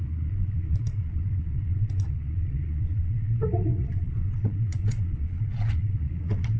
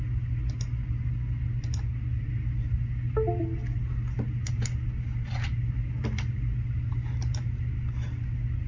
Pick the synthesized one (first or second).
first